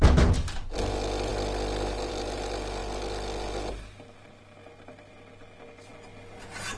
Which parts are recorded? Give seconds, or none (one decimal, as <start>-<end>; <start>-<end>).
0.0-6.8